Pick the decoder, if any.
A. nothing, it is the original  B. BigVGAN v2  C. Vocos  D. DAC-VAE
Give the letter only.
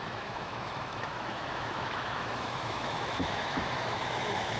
D